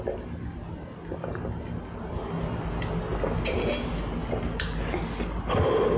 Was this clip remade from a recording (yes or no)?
no